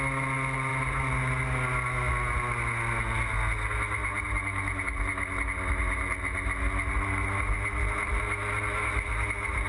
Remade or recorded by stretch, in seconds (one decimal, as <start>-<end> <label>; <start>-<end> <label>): 0.0-9.7 recorded